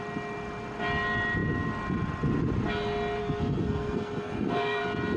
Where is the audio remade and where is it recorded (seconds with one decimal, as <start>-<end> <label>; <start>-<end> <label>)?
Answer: 0.0-3.2 recorded; 3.2-4.8 remade; 4.8-5.2 recorded